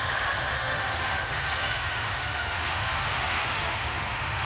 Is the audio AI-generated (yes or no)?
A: yes